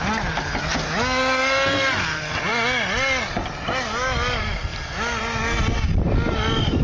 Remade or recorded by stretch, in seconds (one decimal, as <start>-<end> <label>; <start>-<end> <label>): 0.0-6.8 recorded